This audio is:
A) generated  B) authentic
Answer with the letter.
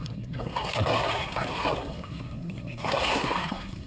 A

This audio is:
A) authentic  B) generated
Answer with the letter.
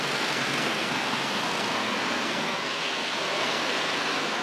B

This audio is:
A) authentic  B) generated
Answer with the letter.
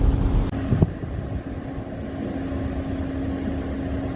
A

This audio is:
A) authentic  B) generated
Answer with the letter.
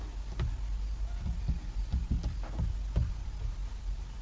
A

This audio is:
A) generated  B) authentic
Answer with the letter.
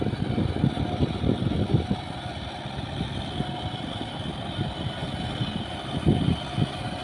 B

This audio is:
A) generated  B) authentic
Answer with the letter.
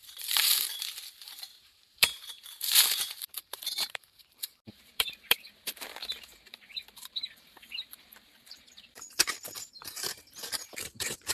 A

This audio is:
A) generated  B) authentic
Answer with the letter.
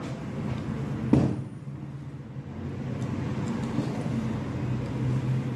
B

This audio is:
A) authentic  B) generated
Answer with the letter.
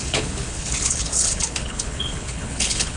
B